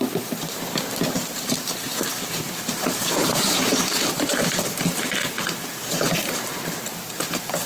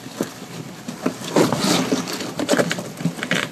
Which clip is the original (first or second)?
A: second